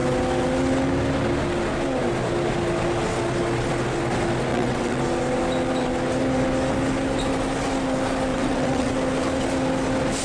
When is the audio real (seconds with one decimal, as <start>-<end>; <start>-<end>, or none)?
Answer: 0.0-4.5; 5.0-8.3; 8.9-10.2